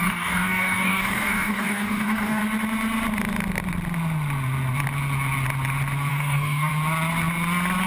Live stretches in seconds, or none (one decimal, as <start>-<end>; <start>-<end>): 2.4-6.1; 6.7-7.9